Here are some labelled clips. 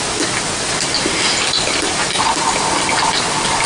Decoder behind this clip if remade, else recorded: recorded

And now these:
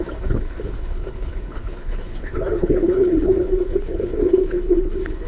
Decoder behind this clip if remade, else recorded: remade, codec, HILCodec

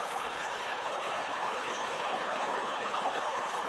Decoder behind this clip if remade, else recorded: remade, codec, HILCodec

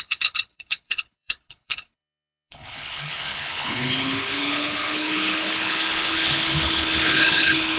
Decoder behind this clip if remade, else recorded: remade, codec, HILCodec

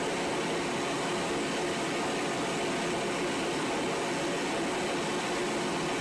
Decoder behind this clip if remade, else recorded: recorded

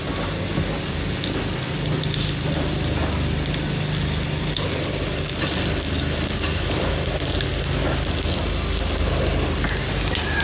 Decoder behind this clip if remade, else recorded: recorded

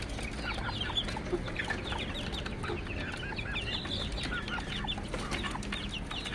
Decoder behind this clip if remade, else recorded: recorded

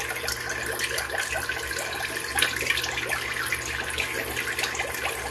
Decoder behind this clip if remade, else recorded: recorded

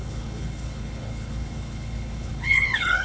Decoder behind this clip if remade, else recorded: remade, codec, HILCodec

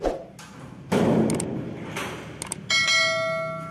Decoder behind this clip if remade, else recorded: recorded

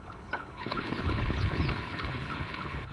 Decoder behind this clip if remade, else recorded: remade, codec, HILCodec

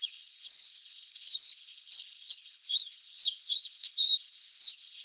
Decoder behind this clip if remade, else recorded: remade, codec, HILCodec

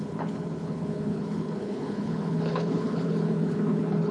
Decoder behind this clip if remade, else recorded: remade, codec, HILCodec